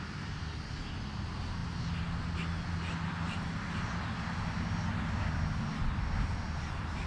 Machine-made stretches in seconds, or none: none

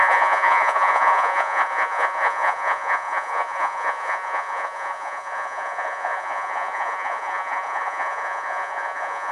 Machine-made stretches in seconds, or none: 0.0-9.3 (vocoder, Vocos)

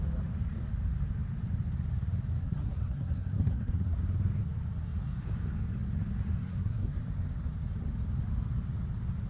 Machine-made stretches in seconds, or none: 2.4-4.0 (codec, SNAC); 6.4-7.0